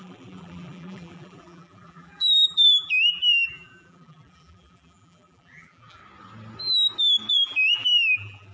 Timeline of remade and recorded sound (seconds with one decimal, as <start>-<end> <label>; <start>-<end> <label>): 0.0-6.0 remade; 6.0-7.3 recorded; 7.3-8.5 remade